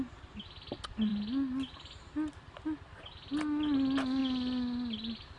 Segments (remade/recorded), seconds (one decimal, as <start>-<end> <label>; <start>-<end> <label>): 0.0-5.4 recorded